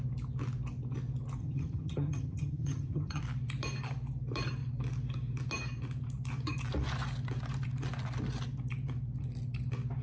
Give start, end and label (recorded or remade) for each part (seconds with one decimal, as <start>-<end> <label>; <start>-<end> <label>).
0.0-1.4 recorded; 1.4-3.2 remade; 3.2-10.0 recorded